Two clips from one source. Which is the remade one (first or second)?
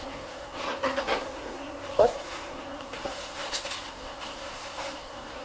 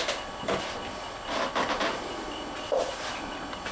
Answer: first